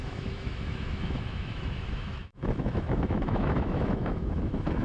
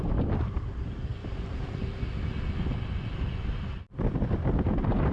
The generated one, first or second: first